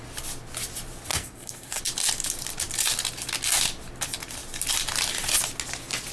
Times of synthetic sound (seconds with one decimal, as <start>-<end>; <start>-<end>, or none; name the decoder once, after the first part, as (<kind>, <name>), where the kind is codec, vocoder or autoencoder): 1.1-1.8 (codec, SNAC)